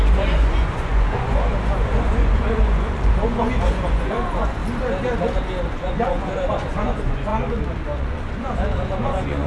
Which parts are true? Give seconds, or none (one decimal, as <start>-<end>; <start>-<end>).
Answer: 4.6-5.6; 7.3-8.0